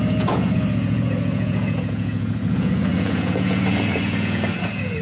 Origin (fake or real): fake